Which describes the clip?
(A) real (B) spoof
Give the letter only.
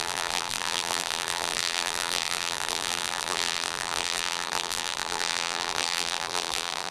B